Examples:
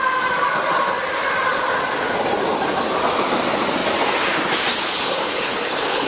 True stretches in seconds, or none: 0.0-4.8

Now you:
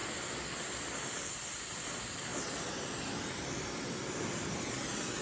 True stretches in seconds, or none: 0.0-5.2

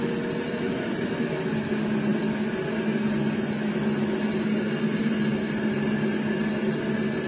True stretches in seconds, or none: 0.0-7.3